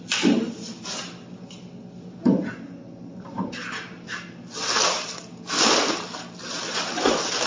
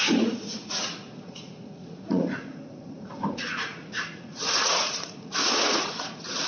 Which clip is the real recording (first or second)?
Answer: first